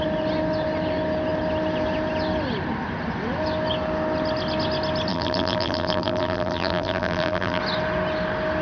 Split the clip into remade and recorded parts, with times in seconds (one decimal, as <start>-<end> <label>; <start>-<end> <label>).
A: 0.0-5.1 recorded; 5.1-7.6 remade; 7.6-8.6 recorded